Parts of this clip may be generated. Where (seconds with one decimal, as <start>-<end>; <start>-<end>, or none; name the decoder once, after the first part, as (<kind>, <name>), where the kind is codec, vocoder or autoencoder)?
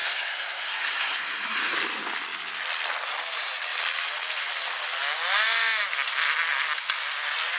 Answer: 0.0-1.8 (codec, SNAC)